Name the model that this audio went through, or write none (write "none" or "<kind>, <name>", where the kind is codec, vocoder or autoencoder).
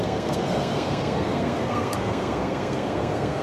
codec, SNAC